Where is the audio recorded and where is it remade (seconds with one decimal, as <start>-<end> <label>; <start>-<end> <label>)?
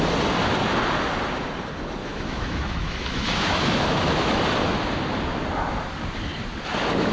0.0-2.0 recorded; 2.0-4.4 remade; 4.4-7.1 recorded